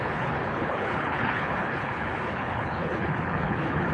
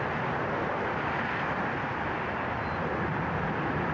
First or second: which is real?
second